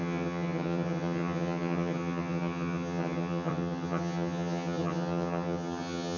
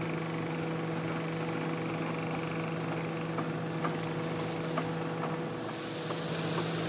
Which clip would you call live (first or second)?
second